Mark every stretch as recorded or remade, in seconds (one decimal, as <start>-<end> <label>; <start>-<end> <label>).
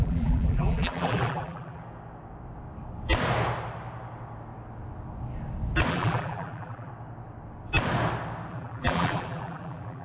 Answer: 0.0-1.8 remade; 1.8-5.9 recorded; 5.9-6.9 remade; 6.9-8.5 recorded; 8.5-10.0 remade